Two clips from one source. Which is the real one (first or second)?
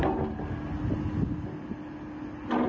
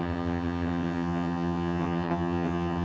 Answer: first